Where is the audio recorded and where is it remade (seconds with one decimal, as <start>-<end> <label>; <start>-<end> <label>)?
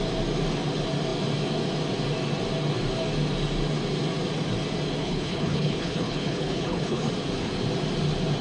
0.0-5.0 recorded; 5.0-7.1 remade; 7.1-8.4 recorded